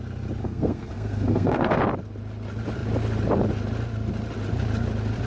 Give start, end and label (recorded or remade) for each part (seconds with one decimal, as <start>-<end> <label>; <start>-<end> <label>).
0.0-0.4 recorded; 0.4-1.8 remade; 1.8-5.3 recorded